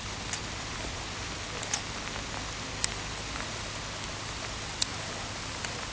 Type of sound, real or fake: real